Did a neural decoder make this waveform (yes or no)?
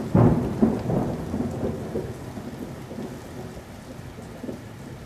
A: no